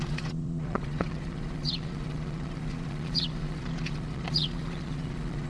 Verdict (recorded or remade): remade